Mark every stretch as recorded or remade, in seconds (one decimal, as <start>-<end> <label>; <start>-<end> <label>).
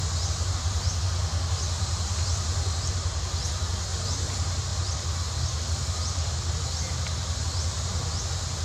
0.0-8.6 recorded